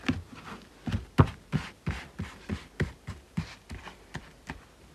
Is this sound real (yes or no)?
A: yes